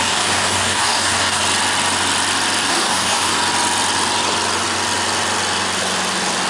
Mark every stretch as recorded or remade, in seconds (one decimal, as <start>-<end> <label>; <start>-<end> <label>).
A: 0.0-1.4 remade; 1.4-2.7 recorded; 2.7-3.4 remade; 3.4-6.5 recorded